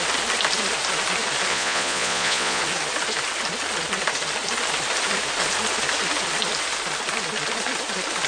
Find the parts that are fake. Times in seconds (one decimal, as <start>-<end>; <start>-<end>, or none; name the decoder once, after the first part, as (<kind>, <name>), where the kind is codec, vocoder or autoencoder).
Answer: 1.5-2.6 (vocoder, Vocos)